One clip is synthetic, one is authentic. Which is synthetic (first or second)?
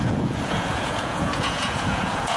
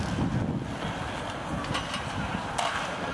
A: first